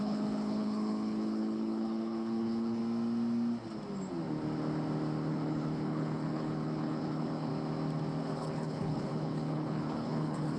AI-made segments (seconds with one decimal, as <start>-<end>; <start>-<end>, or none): 0.0-2.8; 5.3-7.5; 8.2-10.6